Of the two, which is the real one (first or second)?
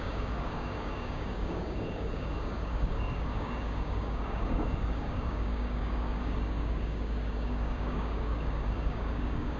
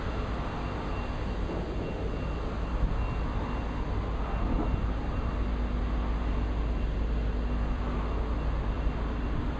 second